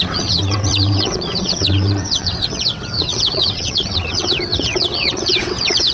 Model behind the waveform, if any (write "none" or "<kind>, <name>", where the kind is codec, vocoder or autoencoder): vocoder, WaveNeXt